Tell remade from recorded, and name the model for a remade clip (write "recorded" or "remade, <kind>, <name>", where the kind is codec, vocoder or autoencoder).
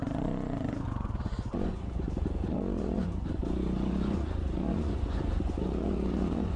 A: remade, vocoder, Vocos